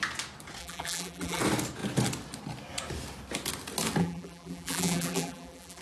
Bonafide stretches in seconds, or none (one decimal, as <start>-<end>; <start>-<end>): 0.0-0.6; 1.4-4.0